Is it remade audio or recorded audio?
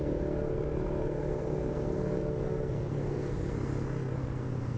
remade